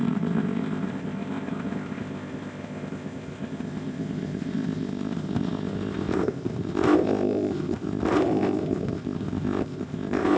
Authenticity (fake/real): fake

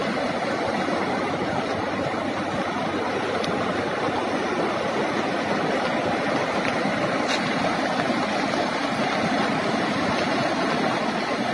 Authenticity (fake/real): real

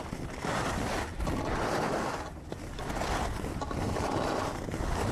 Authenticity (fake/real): real